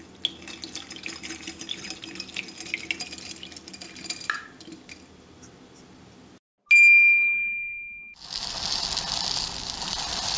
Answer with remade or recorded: recorded